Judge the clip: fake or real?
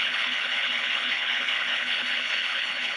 fake